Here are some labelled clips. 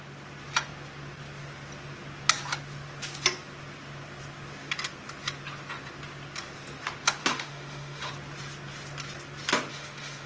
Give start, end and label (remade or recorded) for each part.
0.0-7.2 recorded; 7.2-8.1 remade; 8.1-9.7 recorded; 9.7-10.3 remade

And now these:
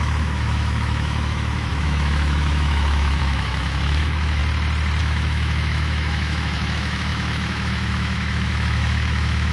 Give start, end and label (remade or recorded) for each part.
0.0-4.4 remade; 4.4-5.0 recorded; 5.0-9.5 remade

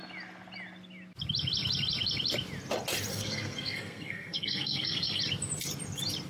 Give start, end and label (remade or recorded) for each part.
0.0-3.1 recorded; 3.1-5.2 remade; 5.2-6.3 recorded

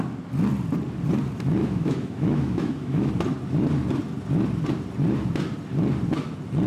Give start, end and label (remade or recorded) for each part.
0.0-1.6 recorded; 1.6-3.1 remade; 3.1-6.7 recorded

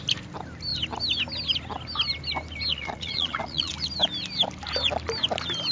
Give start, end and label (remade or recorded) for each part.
0.0-2.7 recorded; 2.7-3.7 remade; 3.7-5.7 recorded

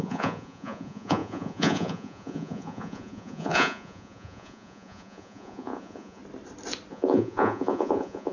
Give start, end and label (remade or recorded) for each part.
0.0-6.2 remade; 6.2-6.9 recorded; 6.9-8.3 remade

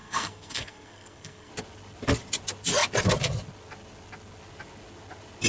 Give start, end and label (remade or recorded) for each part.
0.0-1.5 remade; 1.5-5.5 recorded